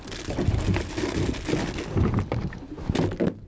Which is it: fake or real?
real